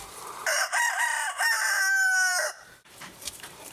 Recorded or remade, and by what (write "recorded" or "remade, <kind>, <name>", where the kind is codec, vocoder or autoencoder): remade, vocoder, BigVGAN v2